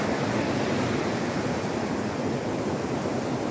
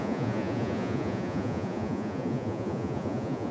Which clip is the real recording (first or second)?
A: first